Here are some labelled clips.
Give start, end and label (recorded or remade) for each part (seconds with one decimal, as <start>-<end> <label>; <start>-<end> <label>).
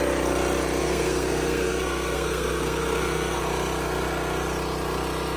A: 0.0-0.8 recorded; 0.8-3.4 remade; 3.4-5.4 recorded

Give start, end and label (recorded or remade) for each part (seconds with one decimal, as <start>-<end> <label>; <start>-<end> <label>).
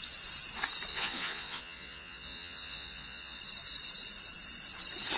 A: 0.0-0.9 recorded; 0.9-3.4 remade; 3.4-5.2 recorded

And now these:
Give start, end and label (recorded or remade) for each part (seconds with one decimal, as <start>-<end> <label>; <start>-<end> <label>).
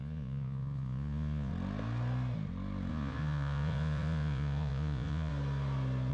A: 0.0-1.5 remade; 1.5-2.9 recorded; 2.9-5.3 remade; 5.3-6.1 recorded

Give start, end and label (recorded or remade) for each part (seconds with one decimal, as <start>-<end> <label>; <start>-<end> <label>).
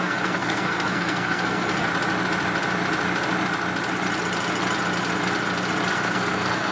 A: 0.0-1.9 remade; 1.9-5.9 recorded; 5.9-6.7 remade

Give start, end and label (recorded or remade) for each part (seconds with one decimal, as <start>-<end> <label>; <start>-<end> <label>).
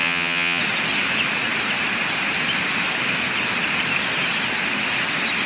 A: 0.0-0.6 remade; 0.6-5.5 recorded